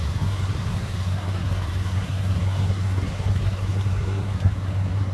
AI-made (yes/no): yes